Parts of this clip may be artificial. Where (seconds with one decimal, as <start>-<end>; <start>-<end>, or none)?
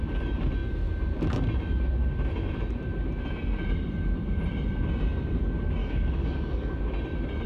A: 5.8-6.8